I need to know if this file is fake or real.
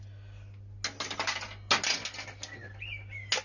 real